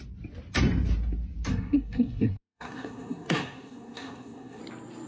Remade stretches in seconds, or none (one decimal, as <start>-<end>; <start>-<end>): 1.5-4.6

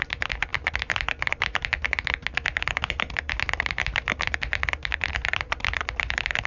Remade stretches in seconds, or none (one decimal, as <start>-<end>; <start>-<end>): 0.0-0.5; 3.3-6.5

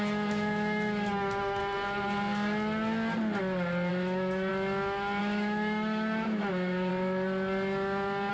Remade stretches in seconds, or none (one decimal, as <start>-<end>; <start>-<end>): 0.0-1.6; 3.9-4.5; 5.2-6.9

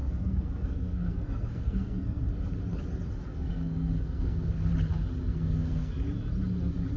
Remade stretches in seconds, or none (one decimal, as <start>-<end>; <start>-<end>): 0.0-2.2; 3.3-4.7; 5.3-5.9

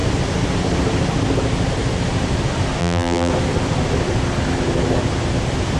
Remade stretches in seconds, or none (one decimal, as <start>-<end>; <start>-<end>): 2.8-3.3

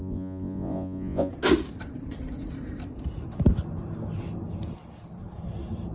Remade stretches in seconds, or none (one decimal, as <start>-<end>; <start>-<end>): 0.0-1.3

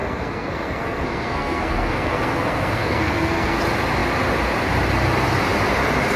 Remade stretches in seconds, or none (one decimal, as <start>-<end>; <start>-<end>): 0.0-3.6

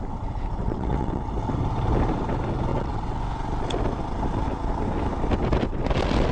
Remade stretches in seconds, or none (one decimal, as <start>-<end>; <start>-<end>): 0.6-1.2; 2.7-3.2